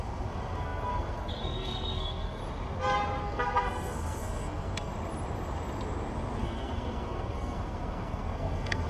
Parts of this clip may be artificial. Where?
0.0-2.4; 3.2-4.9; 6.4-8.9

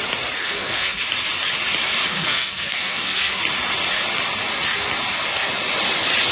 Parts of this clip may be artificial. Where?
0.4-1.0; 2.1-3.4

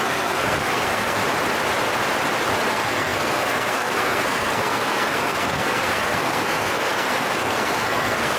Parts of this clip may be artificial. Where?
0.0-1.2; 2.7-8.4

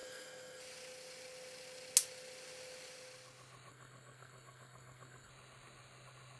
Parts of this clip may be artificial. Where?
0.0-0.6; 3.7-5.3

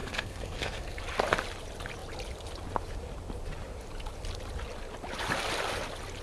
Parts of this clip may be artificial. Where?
0.0-1.0

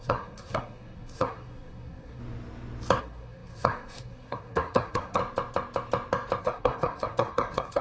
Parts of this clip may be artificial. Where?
0.0-2.2; 3.0-5.2; 6.4-7.8

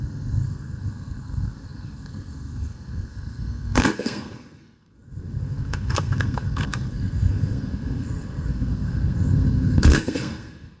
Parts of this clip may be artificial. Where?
0.0-10.8